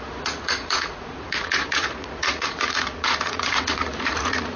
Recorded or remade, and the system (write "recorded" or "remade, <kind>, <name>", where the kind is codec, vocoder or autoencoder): remade, vocoder, Vocos